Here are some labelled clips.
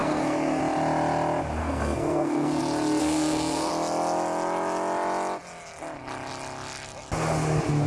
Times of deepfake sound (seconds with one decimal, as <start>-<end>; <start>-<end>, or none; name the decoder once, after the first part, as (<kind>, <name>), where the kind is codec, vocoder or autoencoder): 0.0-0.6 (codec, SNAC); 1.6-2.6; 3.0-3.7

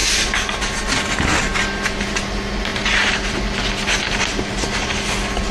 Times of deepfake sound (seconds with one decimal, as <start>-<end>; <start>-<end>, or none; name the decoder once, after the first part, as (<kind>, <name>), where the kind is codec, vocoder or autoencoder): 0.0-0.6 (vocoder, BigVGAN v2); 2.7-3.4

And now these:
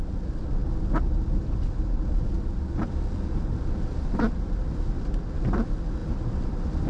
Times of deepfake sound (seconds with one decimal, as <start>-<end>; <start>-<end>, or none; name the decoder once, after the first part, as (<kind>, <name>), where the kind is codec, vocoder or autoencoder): 0.6-4.7 (vocoder, BigVGAN v2); 6.0-6.9